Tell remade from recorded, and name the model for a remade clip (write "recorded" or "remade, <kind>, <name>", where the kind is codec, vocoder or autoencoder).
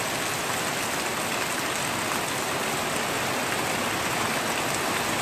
recorded